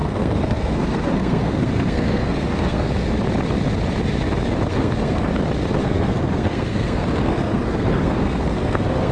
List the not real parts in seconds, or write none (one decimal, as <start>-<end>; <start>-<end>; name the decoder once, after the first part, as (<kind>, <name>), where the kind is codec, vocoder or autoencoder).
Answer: 0.0-2.9 (codec, SNAC); 4.7-5.3; 5.8-9.1